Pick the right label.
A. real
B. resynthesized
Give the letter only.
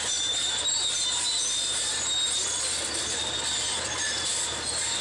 A